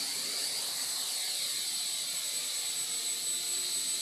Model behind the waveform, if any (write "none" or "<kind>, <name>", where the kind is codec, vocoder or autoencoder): none